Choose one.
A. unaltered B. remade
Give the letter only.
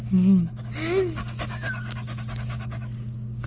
B